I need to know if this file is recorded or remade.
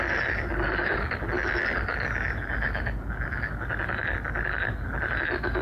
recorded